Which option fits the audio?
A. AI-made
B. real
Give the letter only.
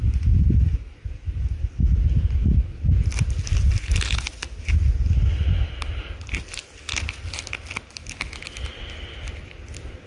B